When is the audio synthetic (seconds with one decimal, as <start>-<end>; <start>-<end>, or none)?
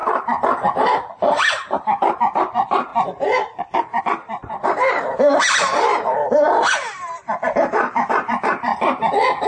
0.0-8.7